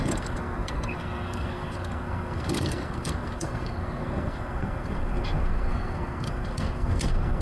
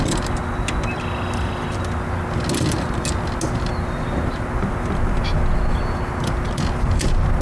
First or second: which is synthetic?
first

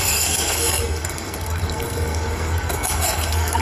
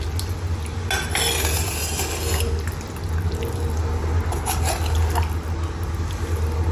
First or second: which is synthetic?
first